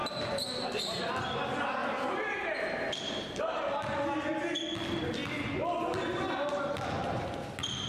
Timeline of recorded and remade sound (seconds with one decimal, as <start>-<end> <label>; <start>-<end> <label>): 0.0-1.0 remade; 1.0-1.8 recorded; 1.8-3.4 remade; 3.4-7.9 recorded